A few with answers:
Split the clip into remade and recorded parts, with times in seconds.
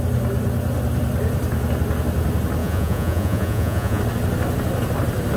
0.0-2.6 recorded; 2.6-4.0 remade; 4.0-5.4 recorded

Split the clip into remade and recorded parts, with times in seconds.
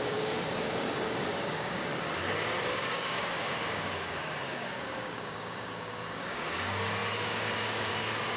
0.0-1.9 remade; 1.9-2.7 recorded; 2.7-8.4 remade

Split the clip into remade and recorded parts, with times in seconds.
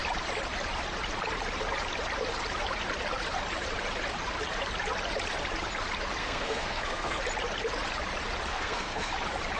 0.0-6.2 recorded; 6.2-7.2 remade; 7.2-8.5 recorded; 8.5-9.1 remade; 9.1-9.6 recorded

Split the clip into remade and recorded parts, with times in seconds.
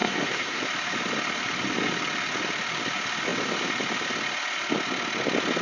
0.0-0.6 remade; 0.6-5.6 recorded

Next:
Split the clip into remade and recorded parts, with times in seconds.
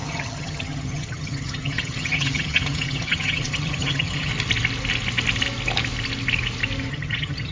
0.0-4.3 remade; 4.3-6.9 recorded; 6.9-7.5 remade